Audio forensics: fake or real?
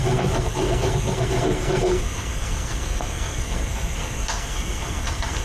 fake